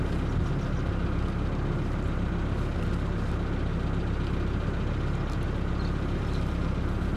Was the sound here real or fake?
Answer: real